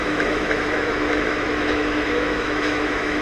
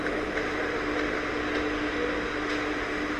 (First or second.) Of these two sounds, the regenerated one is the first